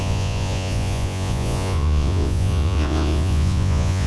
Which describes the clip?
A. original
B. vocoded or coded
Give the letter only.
B